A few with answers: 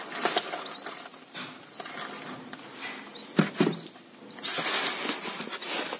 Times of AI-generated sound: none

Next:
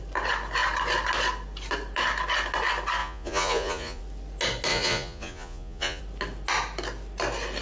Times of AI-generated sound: 3.0-4.0 (vocoder, Vocos); 4.7-6.0

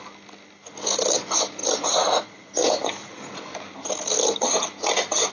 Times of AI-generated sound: 1.6-3.2 (vocoder, Vocos)

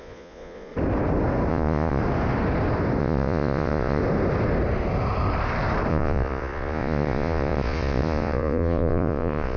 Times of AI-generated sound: 0.0-0.7 (vocoder, Vocos); 1.5-2.0; 3.0-4.0; 5.9-9.6